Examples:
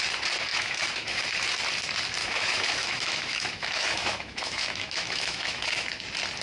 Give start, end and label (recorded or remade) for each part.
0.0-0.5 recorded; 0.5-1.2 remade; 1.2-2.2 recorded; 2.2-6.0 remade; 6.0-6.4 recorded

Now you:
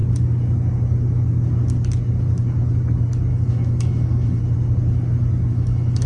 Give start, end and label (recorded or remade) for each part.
0.0-3.3 recorded; 3.3-4.4 remade; 4.4-5.5 recorded; 5.5-6.1 remade

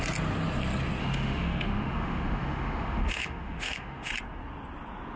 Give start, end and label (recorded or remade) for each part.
0.0-1.0 recorded; 1.0-4.1 remade; 4.1-5.2 recorded

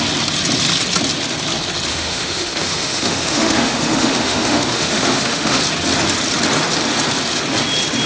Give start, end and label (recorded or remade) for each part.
0.0-1.9 recorded; 1.9-5.6 remade; 5.6-8.1 recorded

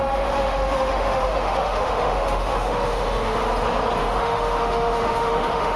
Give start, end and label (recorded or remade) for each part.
0.0-3.4 remade; 3.4-4.0 recorded; 4.0-5.8 remade

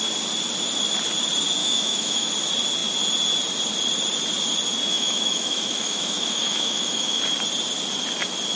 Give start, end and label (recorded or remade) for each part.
0.0-1.6 recorded; 1.6-2.3 remade; 2.3-4.9 recorded; 4.9-7.2 remade; 7.2-8.6 recorded